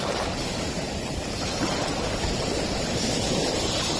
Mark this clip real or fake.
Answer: real